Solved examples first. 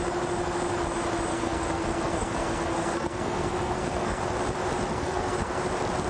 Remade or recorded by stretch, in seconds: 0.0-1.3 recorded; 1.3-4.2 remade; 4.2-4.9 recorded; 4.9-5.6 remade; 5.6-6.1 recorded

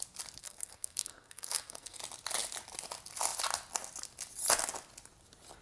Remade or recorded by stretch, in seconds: 0.0-0.4 recorded; 0.4-2.0 remade; 2.0-5.6 recorded

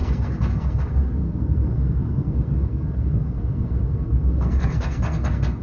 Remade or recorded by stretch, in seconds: 0.0-5.6 remade